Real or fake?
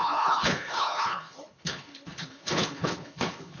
fake